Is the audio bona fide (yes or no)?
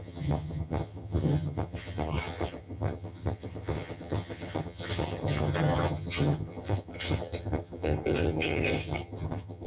no